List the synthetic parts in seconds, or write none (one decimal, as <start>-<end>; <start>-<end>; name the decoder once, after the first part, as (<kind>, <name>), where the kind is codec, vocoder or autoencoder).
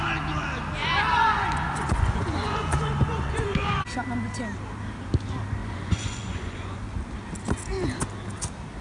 0.8-3.8 (vocoder, Vocos); 5.6-6.8